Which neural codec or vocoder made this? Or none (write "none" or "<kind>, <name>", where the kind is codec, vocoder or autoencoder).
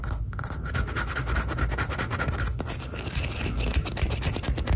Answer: none